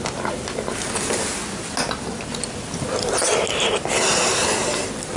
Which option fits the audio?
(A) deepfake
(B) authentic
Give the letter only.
B